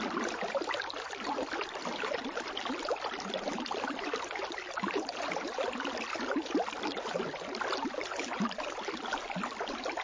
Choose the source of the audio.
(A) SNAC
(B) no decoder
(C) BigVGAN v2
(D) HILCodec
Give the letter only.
B